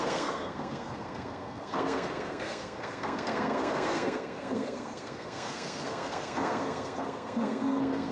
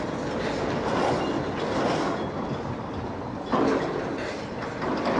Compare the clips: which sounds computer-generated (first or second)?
first